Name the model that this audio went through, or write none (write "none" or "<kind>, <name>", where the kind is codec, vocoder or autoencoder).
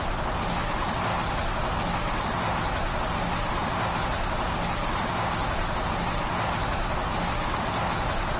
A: none